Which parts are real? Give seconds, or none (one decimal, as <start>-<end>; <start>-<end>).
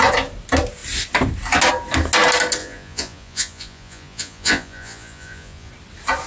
0.0-2.6; 5.7-6.3